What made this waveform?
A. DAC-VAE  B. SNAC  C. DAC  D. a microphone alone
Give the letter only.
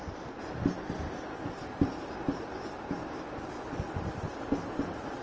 D